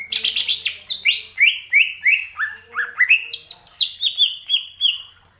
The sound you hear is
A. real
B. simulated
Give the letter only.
A